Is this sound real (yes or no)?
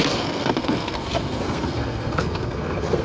no